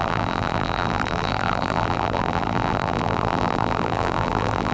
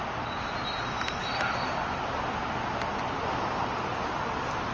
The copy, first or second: first